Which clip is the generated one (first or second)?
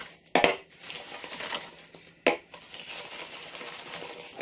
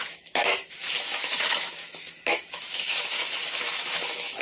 second